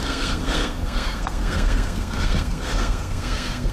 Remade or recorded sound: remade